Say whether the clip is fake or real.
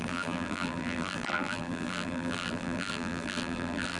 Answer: fake